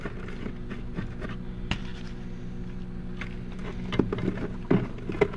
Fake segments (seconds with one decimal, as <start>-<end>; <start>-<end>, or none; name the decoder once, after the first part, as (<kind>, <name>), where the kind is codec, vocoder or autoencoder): none